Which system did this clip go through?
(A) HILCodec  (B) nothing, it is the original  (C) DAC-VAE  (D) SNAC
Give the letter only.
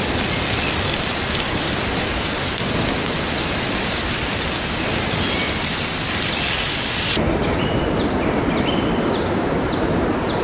B